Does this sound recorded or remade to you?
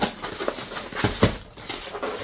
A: recorded